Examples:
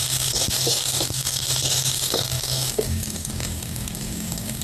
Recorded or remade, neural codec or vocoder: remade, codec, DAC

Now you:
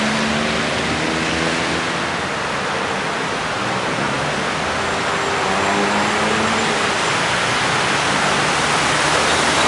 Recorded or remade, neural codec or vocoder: recorded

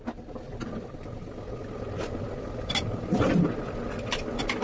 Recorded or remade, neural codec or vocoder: recorded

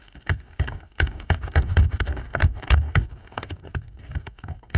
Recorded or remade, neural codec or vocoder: remade, codec, DAC